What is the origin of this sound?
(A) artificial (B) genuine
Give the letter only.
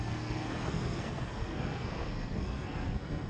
A